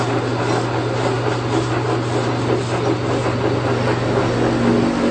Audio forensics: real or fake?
real